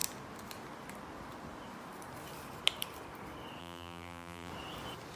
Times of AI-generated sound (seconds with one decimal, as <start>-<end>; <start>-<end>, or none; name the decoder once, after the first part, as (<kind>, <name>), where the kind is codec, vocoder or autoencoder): 3.6-4.5 (vocoder, BigVGAN v2)